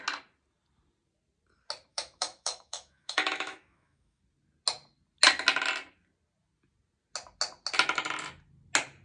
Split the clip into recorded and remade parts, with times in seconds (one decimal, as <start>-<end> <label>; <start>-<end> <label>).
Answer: 0.0-1.9 recorded; 1.9-4.2 remade; 4.2-9.0 recorded